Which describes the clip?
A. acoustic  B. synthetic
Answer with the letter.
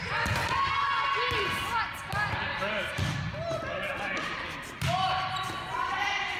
A